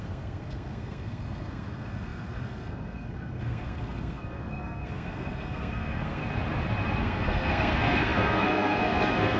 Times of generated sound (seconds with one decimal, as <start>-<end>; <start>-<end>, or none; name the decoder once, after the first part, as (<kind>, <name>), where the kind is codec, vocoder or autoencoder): 0.0-6.2 (codec, SNAC); 7.0-9.4